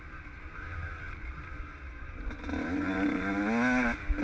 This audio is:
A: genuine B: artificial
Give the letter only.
A